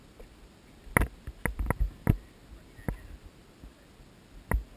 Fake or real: real